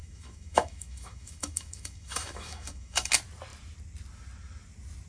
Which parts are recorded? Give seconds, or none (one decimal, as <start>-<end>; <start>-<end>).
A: 3.1-5.1